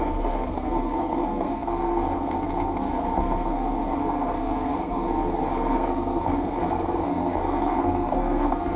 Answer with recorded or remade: remade